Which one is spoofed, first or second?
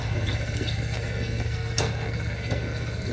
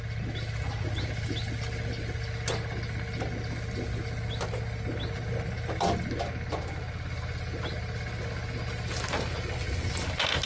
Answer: first